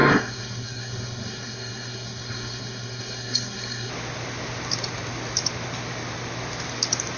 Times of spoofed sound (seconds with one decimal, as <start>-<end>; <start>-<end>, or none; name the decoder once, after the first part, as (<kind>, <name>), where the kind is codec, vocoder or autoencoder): 0.0-3.9 (codec, SNAC)